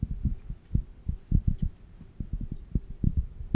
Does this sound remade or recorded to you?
recorded